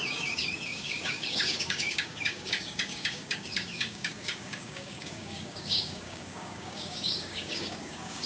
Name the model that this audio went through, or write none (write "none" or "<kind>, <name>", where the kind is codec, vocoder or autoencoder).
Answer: codec, DAC